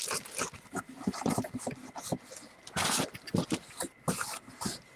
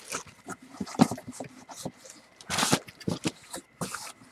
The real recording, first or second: first